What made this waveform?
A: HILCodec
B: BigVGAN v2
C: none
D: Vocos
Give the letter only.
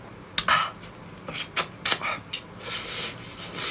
C